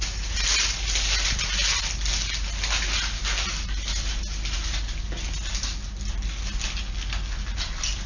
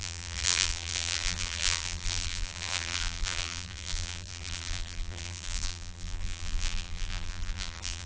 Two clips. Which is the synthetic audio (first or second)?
second